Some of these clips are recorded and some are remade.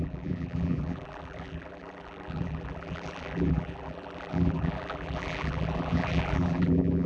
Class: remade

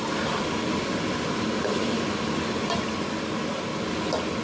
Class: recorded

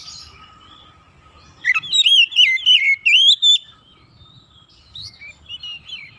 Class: recorded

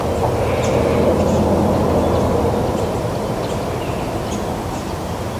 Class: recorded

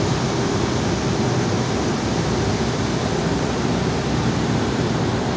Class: recorded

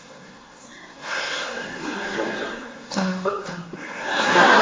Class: remade